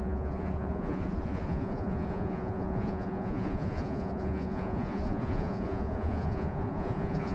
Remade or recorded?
remade